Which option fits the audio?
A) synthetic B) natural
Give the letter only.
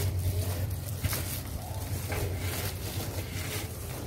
B